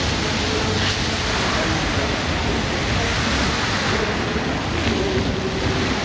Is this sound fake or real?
real